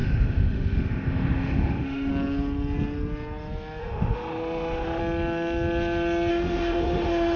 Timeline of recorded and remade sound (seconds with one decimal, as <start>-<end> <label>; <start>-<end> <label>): 0.0-2.1 remade; 2.1-3.8 recorded; 3.8-5.0 remade; 5.0-6.3 recorded; 6.3-7.4 remade